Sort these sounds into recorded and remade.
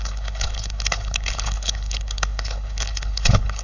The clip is remade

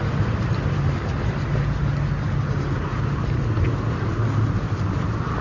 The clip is recorded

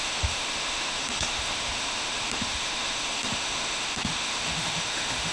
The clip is remade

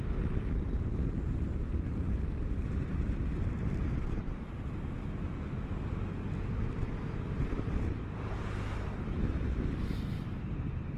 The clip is recorded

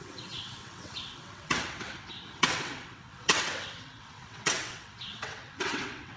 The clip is remade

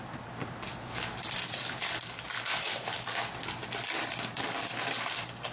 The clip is recorded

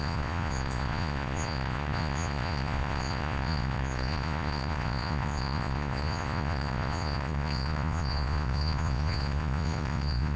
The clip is remade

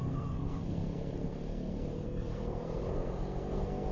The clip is remade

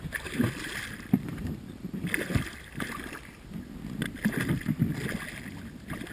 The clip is recorded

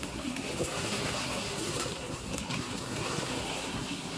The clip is remade